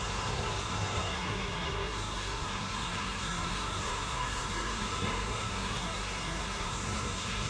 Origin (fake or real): fake